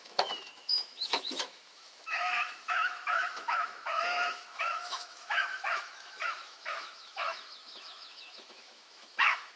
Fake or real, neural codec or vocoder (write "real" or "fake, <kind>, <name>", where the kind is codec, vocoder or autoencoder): fake, autoencoder, DAC-VAE